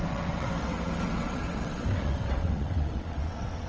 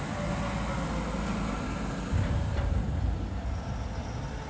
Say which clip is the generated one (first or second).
first